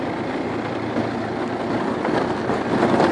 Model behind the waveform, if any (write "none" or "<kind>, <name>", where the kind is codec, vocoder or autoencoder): none